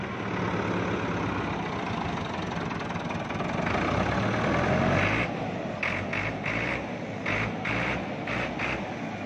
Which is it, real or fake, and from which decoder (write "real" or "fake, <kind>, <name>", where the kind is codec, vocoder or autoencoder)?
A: real